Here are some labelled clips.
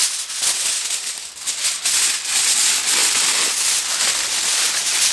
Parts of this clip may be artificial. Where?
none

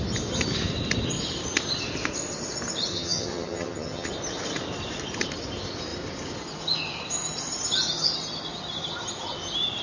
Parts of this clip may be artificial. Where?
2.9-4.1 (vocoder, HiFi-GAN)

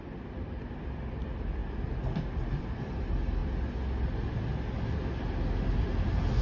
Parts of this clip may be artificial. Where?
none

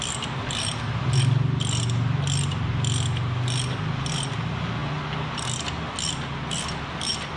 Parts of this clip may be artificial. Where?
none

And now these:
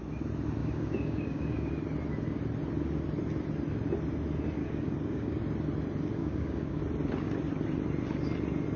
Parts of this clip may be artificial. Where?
0.6-1.7 (codec, DAC); 4.6-5.4; 6.2-6.8

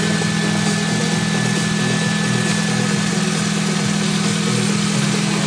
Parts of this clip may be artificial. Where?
none

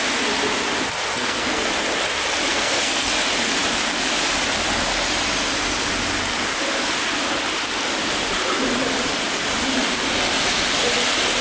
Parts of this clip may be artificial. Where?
1.1-1.7 (codec, SNAC); 2.5-3.1

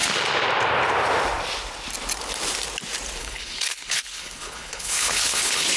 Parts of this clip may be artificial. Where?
3.2-5.8 (codec, HILCodec)